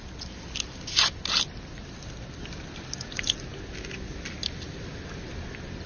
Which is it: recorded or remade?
recorded